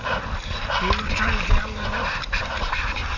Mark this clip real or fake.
real